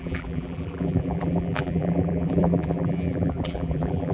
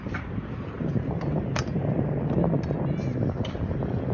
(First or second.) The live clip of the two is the second